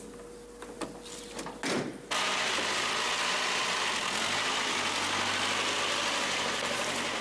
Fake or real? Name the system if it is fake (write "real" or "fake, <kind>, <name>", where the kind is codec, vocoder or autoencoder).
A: real